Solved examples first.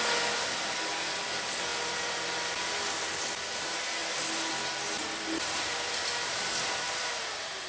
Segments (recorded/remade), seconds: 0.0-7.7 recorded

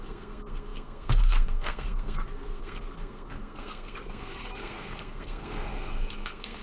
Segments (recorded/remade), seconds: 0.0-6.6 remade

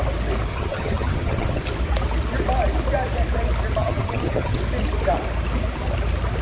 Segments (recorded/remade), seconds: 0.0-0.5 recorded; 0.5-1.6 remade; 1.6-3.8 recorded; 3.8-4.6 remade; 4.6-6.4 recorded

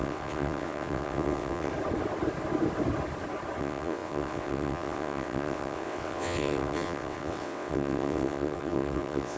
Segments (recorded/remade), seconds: 0.0-1.7 remade; 1.7-3.6 recorded; 3.6-9.4 remade

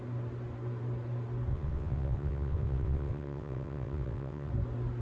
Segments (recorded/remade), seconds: 0.0-1.5 recorded; 1.5-4.5 remade; 4.5-5.0 recorded